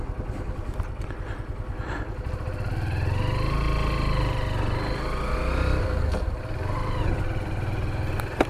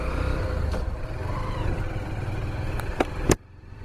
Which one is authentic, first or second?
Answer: first